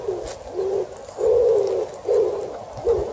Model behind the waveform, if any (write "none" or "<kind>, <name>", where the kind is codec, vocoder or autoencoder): none